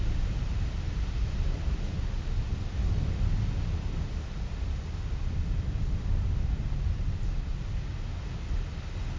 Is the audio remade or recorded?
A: recorded